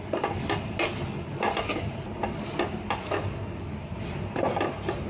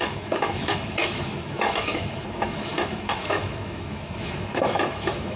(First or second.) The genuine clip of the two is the first